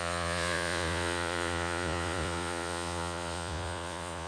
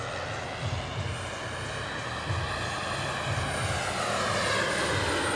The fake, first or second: first